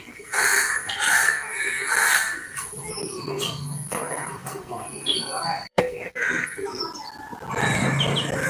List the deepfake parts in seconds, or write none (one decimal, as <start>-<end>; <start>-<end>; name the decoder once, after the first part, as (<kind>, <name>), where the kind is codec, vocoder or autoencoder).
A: 0.0-6.8 (codec, SNAC)